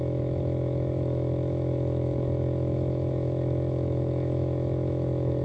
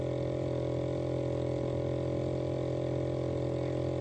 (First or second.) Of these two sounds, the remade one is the first